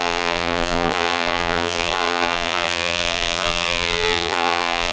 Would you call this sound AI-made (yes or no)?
yes